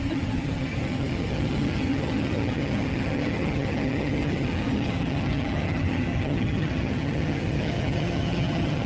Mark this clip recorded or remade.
remade